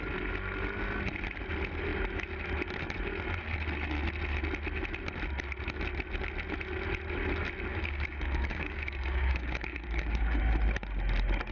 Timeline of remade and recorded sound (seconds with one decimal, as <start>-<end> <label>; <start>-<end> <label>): 0.0-7.7 recorded; 7.7-10.4 remade; 10.4-11.5 recorded

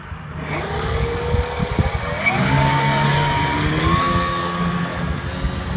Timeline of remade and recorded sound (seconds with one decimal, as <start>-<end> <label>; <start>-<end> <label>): 0.0-1.6 remade; 1.6-2.2 recorded; 2.2-4.9 remade; 4.9-5.8 recorded

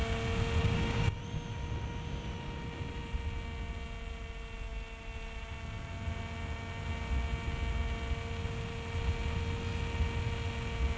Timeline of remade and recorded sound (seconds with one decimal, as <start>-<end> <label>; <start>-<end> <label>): 0.0-0.6 recorded; 0.6-1.2 remade; 1.2-11.0 recorded

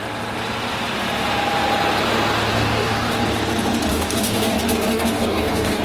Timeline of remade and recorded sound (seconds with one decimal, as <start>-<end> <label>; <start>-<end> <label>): 0.0-2.5 recorded; 2.5-3.2 remade; 3.2-3.9 recorded; 3.9-5.8 remade

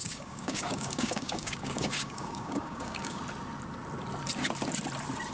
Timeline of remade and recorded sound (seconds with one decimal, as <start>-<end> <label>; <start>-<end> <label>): 0.0-3.2 remade; 3.2-5.3 recorded